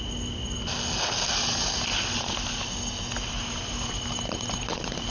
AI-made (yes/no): no